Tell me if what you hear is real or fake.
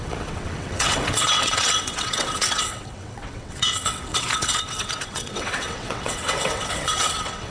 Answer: fake